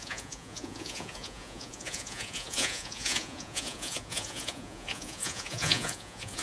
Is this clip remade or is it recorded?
remade